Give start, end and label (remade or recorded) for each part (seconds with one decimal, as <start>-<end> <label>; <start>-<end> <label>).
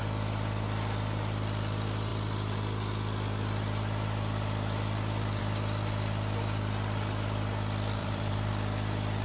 0.0-8.0 recorded; 8.0-8.5 remade; 8.5-9.2 recorded